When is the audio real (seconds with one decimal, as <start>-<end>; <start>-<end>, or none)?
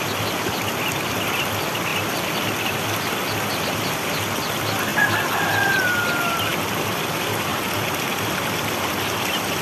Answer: 0.0-9.6